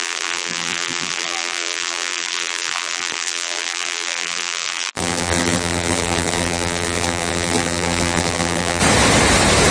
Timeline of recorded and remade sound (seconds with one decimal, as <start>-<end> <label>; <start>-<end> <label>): 0.0-8.8 remade; 8.8-9.7 recorded